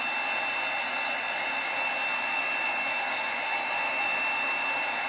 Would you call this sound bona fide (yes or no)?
yes